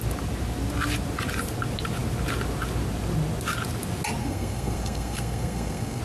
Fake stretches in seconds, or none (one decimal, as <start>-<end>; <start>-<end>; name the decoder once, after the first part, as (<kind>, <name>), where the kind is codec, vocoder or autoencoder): 4.2-6.0 (codec, SNAC)